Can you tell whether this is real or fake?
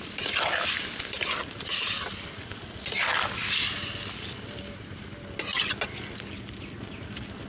real